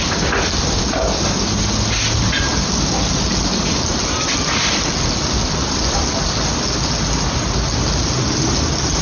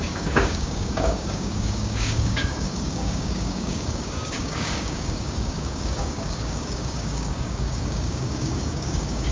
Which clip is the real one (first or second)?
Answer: first